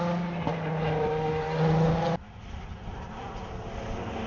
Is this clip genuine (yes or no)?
yes